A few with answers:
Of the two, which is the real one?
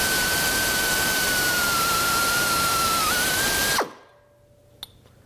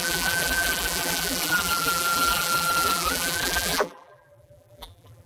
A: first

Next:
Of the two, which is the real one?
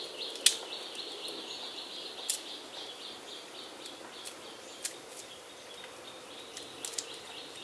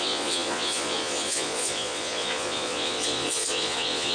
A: first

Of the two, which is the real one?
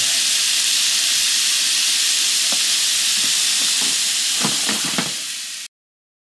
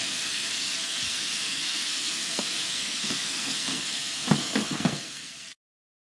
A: first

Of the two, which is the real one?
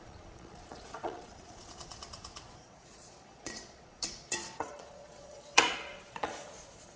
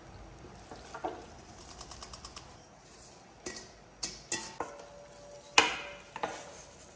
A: second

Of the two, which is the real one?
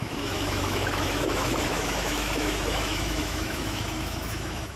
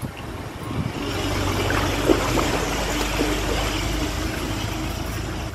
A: second